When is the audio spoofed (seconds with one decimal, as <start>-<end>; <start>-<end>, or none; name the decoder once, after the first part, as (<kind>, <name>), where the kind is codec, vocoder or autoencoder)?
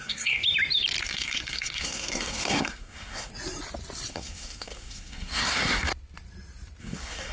0.0-0.4 (codec, SNAC); 1.0-3.3; 4.1-5.9; 6.8-7.3